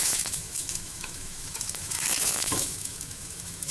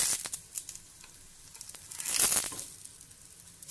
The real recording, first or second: second